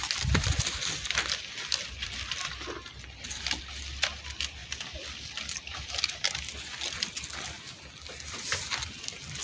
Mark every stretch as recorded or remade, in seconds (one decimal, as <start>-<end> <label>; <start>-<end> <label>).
0.0-9.4 recorded